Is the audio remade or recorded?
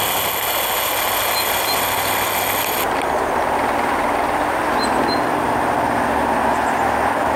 recorded